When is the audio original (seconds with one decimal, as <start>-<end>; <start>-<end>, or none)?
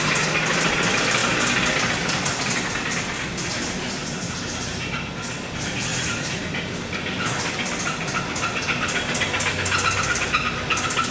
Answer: 0.0-4.0; 5.1-5.9; 6.4-11.1